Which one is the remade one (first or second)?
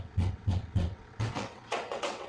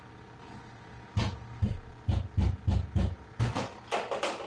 first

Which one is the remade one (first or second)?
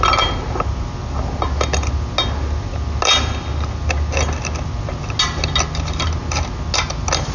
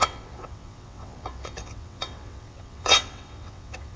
second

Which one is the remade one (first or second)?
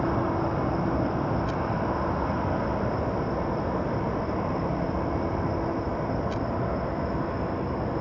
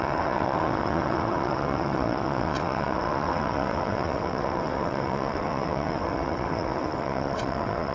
second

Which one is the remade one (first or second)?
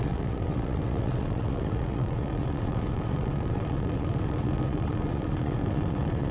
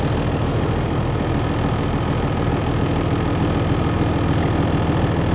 first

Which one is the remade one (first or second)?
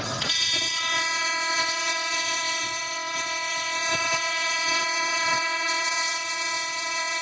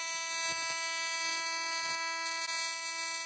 first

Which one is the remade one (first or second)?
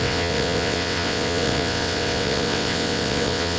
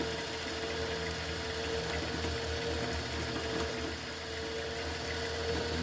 first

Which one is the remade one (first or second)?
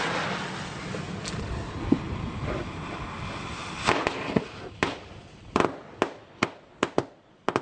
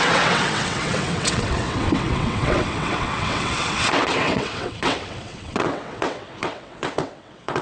second